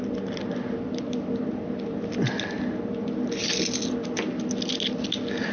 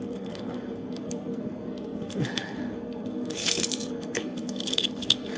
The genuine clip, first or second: first